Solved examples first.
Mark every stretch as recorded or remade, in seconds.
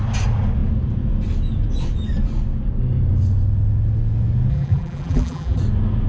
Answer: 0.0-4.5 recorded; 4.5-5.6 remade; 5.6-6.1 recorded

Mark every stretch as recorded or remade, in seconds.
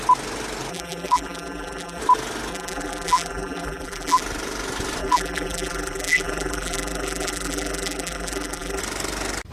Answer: 0.0-0.7 recorded; 0.7-2.0 remade; 2.0-2.5 recorded; 2.5-4.2 remade; 4.2-5.0 recorded; 5.0-8.8 remade; 8.8-9.5 recorded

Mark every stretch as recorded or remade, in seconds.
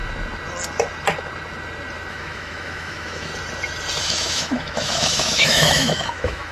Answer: 0.0-2.1 recorded; 2.1-3.3 remade; 3.3-4.0 recorded; 4.0-6.5 remade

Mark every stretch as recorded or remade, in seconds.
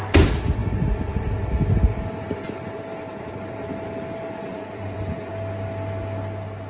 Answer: 0.0-4.4 recorded; 4.4-5.3 remade; 5.3-6.7 recorded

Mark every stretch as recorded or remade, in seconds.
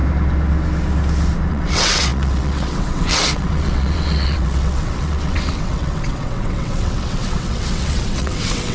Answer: 0.0-1.5 recorded; 1.5-8.7 remade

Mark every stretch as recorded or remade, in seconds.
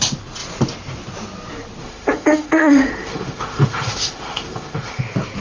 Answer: 0.0-1.8 recorded; 1.8-5.0 remade; 5.0-5.4 recorded